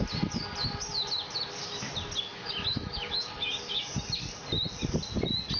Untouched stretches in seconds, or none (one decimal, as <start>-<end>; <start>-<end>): 0.0-2.3; 3.3-5.6